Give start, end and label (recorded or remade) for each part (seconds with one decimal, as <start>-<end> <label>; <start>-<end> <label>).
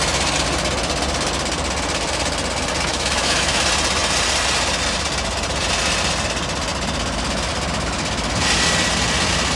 0.0-2.9 recorded; 2.9-3.6 remade; 3.6-9.6 recorded